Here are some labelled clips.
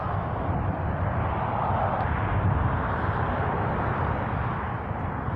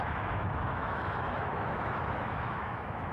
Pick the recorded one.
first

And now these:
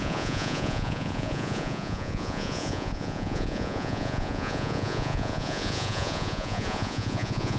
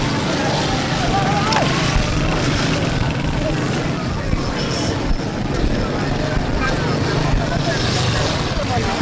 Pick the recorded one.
second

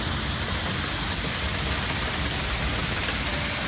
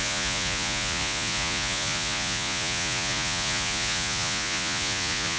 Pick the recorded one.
first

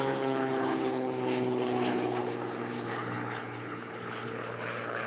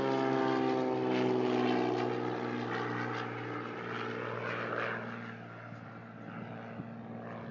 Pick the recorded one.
second